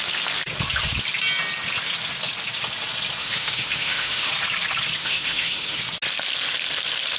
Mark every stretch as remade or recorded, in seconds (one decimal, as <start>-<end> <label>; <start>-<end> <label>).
0.0-3.2 recorded; 3.2-4.3 remade; 4.3-5.0 recorded; 5.0-5.8 remade; 5.8-7.2 recorded